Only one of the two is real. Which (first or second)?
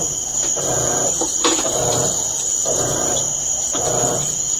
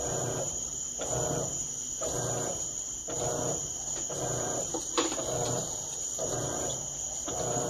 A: first